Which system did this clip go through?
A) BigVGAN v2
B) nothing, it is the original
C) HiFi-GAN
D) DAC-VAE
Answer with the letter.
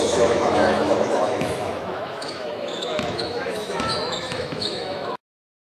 D